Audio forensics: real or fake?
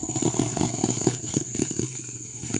fake